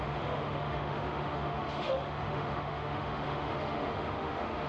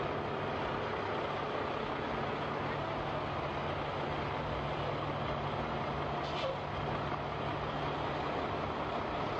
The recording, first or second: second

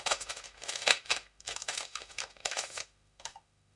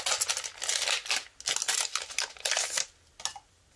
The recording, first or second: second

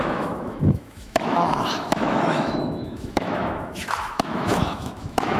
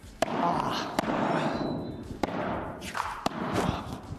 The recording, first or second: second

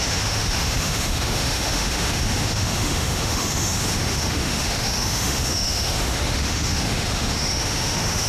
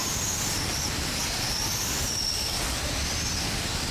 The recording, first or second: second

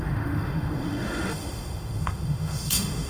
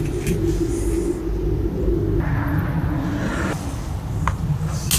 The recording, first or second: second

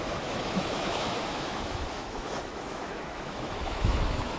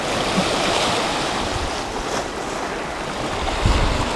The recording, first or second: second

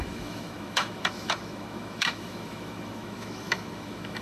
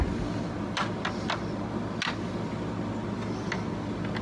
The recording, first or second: second